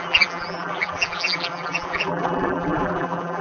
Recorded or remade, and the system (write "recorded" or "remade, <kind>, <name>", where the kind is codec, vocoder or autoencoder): remade, vocoder, BigVGAN v2